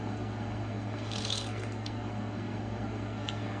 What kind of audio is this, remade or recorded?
remade